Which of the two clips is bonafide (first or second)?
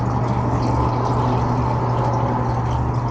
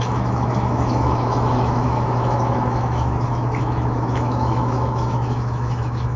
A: first